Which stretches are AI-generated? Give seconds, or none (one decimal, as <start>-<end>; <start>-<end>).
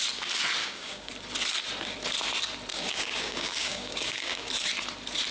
0.6-1.1; 2.7-4.5